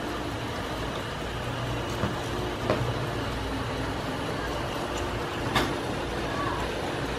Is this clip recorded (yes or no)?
yes